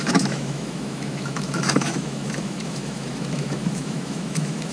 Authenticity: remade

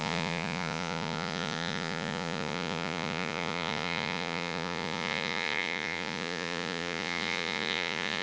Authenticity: remade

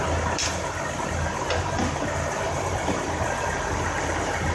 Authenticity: recorded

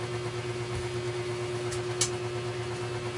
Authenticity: recorded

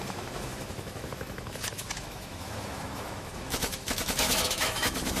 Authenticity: remade